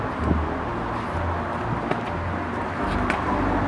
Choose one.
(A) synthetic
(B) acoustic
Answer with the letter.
B